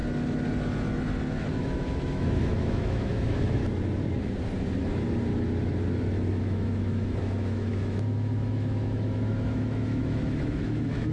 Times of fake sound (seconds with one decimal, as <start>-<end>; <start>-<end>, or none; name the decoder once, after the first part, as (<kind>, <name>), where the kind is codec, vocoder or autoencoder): 1.6-3.6 (autoencoder, DAC-VAE); 6.3-11.1